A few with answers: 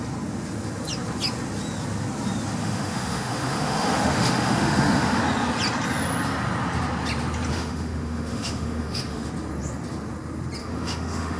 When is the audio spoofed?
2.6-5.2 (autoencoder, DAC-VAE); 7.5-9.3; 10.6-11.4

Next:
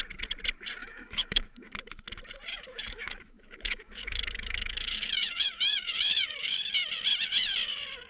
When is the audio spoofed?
0.8-1.9 (autoencoder, DAC-VAE); 2.5-6.7

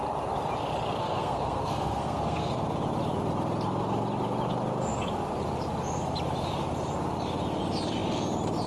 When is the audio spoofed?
1.0-2.6 (codec, SNAC)

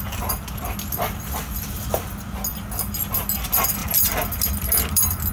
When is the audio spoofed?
3.8-5.3 (vocoder, BigVGAN v2)

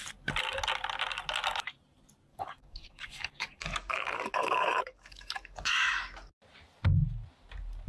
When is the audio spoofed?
2.3-5.9 (codec, DAC)